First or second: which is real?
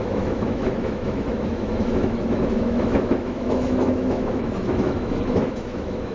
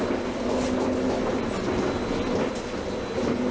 second